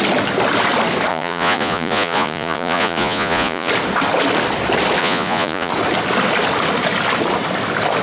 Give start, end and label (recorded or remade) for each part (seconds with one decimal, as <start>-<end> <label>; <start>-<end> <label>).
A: 0.0-1.1 recorded; 1.1-3.7 remade; 3.7-5.0 recorded; 5.0-5.7 remade; 5.7-8.0 recorded

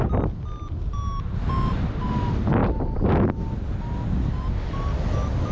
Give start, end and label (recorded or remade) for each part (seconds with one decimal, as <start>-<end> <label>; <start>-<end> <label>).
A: 0.0-5.5 recorded